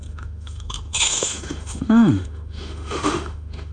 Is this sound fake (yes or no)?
yes